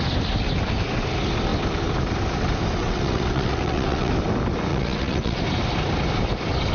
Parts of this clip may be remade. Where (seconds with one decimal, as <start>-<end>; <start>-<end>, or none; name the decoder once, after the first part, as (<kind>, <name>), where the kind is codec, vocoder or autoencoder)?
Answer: 2.8-4.1 (vocoder, WaveNeXt); 4.7-5.4